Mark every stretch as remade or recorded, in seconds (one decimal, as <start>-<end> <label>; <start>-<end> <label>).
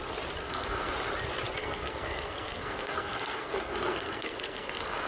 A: 0.0-0.4 recorded; 0.4-0.9 remade; 0.9-1.6 recorded; 1.6-5.1 remade